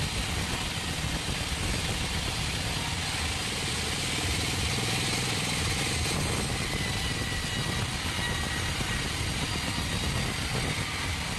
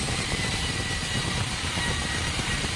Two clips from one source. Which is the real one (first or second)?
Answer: first